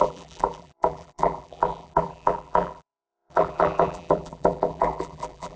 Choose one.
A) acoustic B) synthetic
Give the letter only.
B